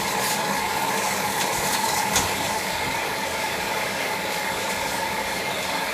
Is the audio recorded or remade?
remade